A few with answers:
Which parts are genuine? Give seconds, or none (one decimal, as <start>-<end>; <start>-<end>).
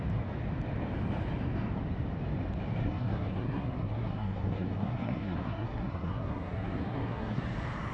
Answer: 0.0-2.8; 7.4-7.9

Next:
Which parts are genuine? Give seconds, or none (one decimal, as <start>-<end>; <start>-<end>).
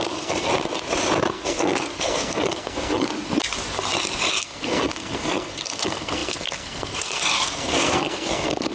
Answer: 0.5-1.3; 3.1-4.3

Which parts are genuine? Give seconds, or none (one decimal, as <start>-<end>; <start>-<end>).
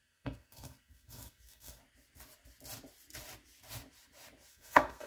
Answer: 1.8-4.5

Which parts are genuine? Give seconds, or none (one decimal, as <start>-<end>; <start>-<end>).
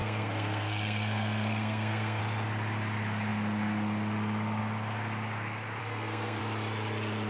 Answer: 2.2-5.8; 6.4-7.3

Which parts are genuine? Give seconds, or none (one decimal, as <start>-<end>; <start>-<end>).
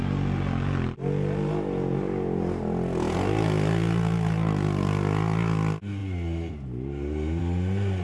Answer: 0.0-8.0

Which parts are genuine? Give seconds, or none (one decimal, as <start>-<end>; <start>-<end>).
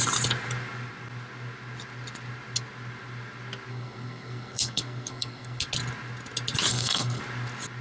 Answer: 0.0-3.7; 5.6-6.7; 7.2-7.8